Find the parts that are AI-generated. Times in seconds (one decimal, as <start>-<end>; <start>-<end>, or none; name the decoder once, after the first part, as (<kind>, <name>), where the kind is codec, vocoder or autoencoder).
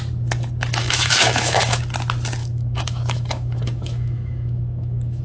0.8-1.8 (autoencoder, DAC-VAE); 2.4-5.2